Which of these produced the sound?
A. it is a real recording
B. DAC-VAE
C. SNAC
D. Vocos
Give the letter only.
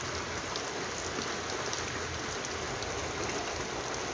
A